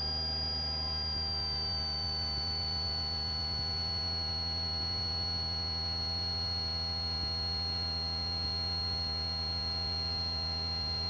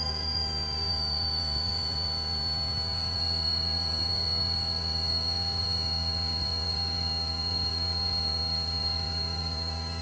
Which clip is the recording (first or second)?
first